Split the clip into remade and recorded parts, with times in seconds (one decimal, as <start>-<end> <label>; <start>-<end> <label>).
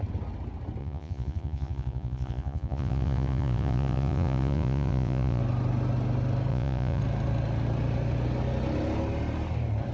0.0-0.8 recorded; 0.8-5.4 remade; 5.4-6.5 recorded; 6.5-7.0 remade; 7.0-9.9 recorded